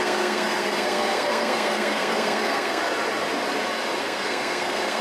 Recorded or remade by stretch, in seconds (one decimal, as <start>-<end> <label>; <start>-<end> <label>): 0.0-2.8 remade; 2.8-4.0 recorded; 4.0-5.0 remade